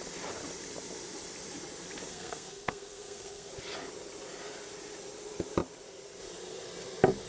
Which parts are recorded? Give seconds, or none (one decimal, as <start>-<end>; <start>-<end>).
0.0-2.1; 3.5-7.3